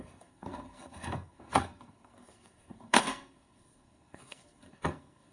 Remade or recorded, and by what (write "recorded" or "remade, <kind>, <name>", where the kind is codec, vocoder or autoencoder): remade, codec, SNAC